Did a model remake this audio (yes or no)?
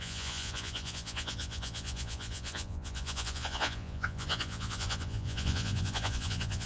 yes